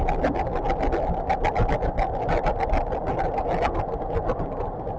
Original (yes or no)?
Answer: yes